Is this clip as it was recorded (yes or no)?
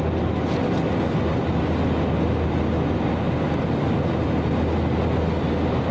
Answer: yes